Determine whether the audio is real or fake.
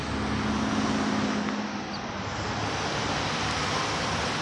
real